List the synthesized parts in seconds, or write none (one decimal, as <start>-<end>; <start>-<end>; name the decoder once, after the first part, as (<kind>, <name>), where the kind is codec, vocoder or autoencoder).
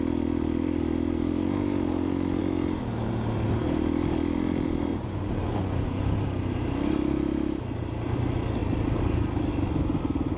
4.9-6.0 (vocoder, Vocos)